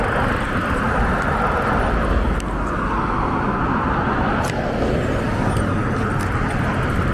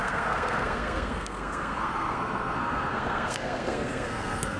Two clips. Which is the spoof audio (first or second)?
second